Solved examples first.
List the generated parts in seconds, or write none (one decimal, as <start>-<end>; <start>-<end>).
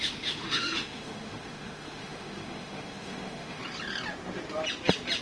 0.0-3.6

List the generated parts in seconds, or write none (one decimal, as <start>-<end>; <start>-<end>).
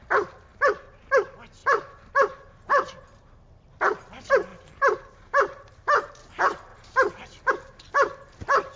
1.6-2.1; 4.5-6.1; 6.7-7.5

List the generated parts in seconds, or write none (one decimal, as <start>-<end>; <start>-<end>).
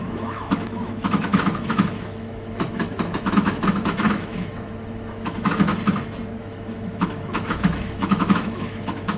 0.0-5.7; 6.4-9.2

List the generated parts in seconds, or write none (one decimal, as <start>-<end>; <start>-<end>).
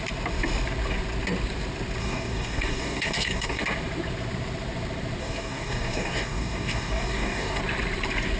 2.0-3.6; 5.2-7.6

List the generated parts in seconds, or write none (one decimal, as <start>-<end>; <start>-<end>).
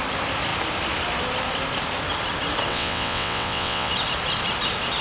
2.7-3.9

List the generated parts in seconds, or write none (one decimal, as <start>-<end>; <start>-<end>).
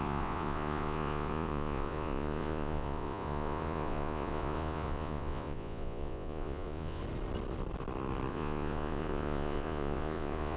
0.0-7.0; 8.3-10.6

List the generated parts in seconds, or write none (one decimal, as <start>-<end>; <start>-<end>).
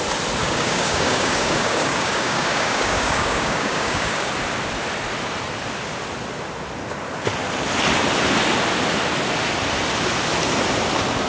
0.4-4.3